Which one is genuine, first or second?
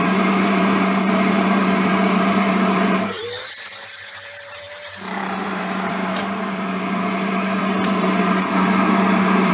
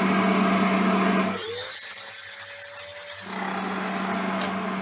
second